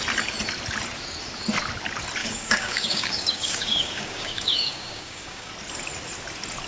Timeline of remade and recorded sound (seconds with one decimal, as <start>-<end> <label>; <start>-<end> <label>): 0.0-2.2 recorded; 2.2-5.5 remade; 5.5-6.7 recorded